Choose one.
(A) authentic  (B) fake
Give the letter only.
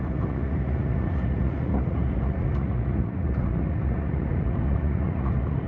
B